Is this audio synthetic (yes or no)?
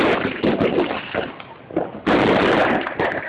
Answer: no